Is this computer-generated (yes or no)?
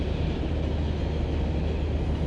no